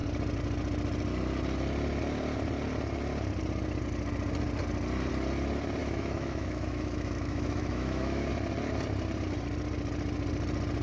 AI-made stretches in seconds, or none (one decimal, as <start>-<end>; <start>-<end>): 5.8-8.3